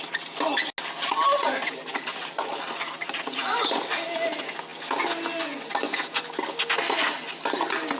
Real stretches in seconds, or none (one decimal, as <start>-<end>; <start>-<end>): 0.0-1.9; 3.4-8.0